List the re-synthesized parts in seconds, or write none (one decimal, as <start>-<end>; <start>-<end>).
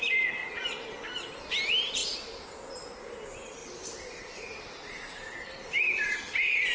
none